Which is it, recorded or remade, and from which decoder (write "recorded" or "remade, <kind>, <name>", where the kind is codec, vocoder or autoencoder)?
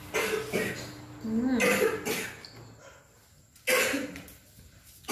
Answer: recorded